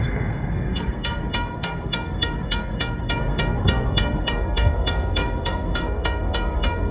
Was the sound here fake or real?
fake